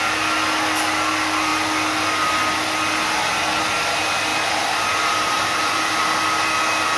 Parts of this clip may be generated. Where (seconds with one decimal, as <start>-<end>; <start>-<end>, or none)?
4.3-5.9